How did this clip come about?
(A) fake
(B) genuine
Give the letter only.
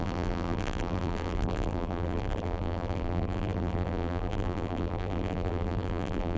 A